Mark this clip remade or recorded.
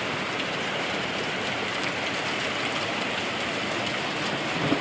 recorded